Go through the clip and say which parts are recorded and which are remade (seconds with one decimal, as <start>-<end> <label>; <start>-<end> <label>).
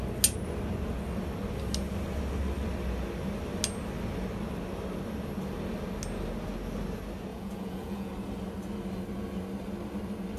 0.0-7.3 recorded; 7.3-8.1 remade; 8.1-10.4 recorded